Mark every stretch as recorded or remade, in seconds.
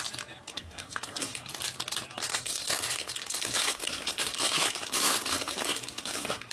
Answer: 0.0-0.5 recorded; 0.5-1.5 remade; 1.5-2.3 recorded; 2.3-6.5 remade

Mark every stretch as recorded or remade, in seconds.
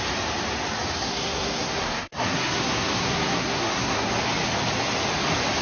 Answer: 0.0-1.0 recorded; 1.0-4.1 remade; 4.1-5.6 recorded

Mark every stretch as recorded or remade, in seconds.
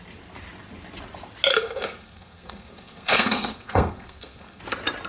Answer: 0.0-1.5 recorded; 1.5-4.6 remade; 4.6-5.1 recorded